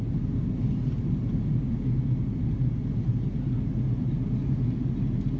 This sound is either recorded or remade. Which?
recorded